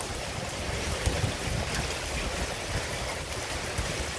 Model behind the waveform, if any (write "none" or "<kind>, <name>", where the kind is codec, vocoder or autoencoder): none